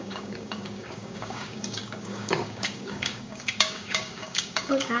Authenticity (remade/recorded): remade